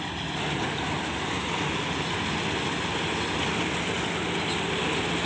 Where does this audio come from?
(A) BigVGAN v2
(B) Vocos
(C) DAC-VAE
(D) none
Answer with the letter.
D